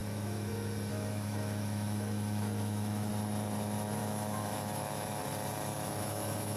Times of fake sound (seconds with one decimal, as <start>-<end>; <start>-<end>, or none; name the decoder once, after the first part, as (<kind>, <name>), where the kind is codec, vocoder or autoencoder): 0.0-0.5 (autoencoder, DAC-VAE); 0.9-3.1; 4.0-5.2; 5.7-6.6